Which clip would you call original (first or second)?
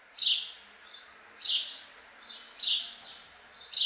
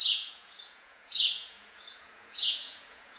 first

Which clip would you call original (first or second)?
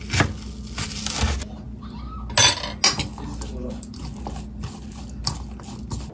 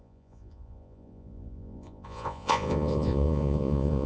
first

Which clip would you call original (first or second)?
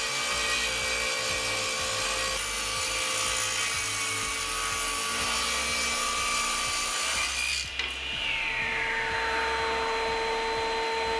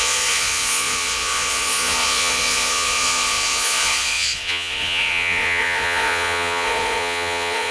first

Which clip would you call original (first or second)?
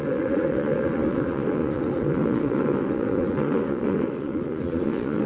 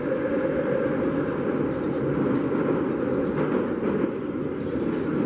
second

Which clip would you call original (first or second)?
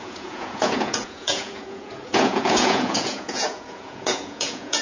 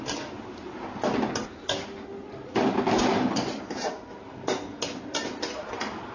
second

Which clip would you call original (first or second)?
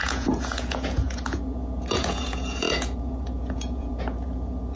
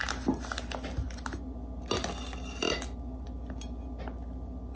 second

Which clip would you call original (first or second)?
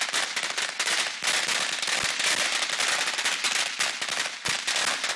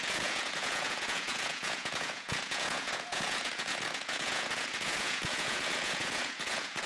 first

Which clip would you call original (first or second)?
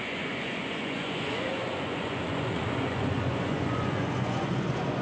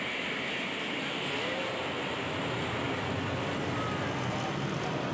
second